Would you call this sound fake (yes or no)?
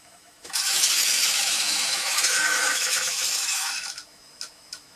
yes